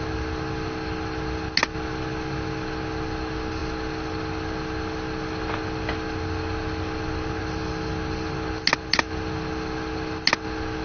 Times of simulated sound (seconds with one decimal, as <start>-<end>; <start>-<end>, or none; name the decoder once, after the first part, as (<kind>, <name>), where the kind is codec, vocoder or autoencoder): none